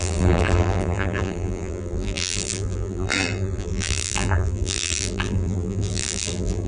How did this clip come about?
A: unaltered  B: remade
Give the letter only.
B